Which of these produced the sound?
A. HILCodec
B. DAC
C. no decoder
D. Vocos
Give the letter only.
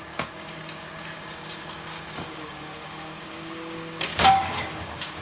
B